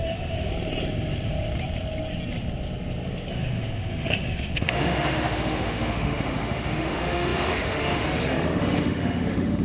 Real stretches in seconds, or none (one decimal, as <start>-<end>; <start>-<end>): 0.5-3.3